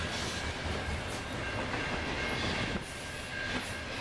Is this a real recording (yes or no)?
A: yes